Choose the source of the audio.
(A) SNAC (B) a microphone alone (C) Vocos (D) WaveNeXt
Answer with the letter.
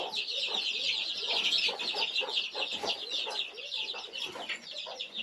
C